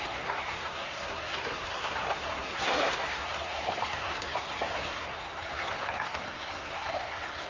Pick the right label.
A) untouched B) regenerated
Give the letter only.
B